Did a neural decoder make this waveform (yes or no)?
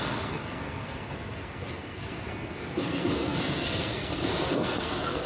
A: yes